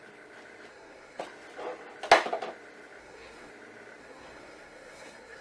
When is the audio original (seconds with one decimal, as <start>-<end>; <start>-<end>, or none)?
0.0-0.7; 1.2-3.0; 3.5-4.0